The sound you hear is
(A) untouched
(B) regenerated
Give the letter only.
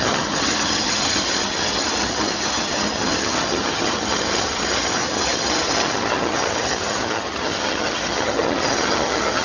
B